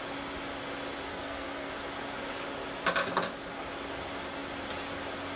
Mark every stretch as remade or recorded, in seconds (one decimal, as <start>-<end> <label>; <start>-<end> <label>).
0.0-1.1 recorded; 1.1-1.7 remade; 1.7-5.4 recorded